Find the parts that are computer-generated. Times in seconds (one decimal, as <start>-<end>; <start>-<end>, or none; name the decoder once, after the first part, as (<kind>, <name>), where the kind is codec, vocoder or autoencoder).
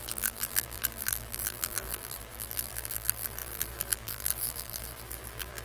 0.0-5.6 (vocoder, BigVGAN v2)